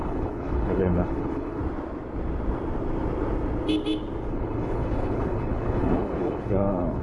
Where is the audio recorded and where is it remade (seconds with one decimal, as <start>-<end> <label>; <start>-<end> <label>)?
0.0-1.6 remade; 1.6-4.3 recorded; 4.3-7.0 remade